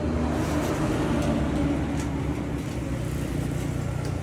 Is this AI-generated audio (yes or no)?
no